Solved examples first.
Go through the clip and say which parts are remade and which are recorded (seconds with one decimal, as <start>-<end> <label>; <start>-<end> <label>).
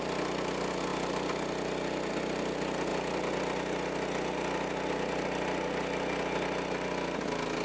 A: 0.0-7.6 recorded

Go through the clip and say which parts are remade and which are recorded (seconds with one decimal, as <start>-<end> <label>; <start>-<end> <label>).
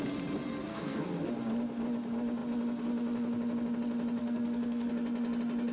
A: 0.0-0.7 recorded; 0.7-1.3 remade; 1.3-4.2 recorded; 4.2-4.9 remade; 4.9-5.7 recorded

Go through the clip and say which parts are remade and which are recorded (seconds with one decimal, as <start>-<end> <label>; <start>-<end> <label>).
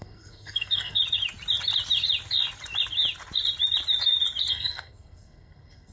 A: 0.0-1.0 remade; 1.0-4.5 recorded; 4.5-5.9 remade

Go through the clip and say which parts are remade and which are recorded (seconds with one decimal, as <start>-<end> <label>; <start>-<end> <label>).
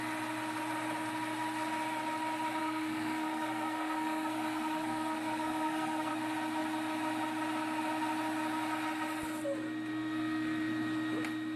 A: 0.0-2.6 recorded; 2.6-6.1 remade; 6.1-9.9 recorded; 9.9-10.7 remade; 10.7-11.6 recorded